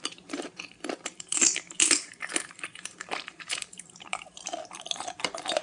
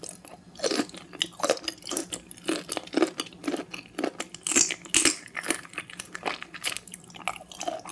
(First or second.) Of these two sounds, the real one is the second